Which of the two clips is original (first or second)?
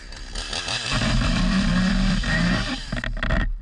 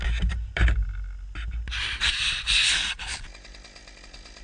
second